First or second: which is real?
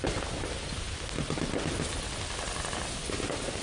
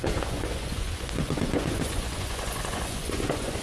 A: first